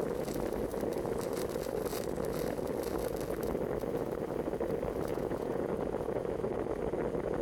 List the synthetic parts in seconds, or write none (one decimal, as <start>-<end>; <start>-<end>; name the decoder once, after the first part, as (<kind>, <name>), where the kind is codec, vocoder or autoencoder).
5.1-6.3 (vocoder, Vocos)